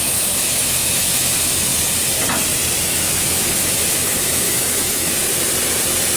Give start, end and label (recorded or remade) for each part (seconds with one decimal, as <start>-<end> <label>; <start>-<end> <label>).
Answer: 0.0-1.7 remade; 1.7-2.8 recorded; 2.8-5.2 remade; 5.2-6.2 recorded